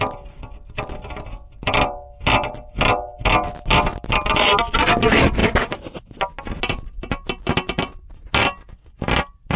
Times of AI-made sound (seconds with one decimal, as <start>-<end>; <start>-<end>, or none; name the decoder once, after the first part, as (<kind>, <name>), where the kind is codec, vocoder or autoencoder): none